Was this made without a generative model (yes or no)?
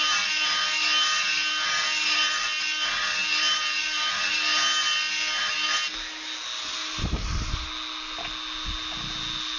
yes